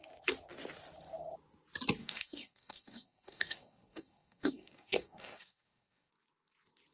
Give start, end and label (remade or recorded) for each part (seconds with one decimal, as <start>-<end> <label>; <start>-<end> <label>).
0.0-2.0 recorded; 2.0-6.1 remade; 6.1-6.9 recorded